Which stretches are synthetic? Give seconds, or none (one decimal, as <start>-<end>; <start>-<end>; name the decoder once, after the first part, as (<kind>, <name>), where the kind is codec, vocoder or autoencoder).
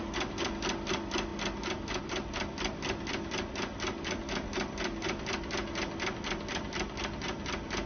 none